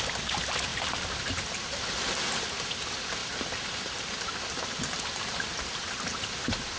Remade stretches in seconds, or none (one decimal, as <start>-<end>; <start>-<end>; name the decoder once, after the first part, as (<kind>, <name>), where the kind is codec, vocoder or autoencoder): 0.7-2.8 (vocoder, BigVGAN v2); 3.2-5.3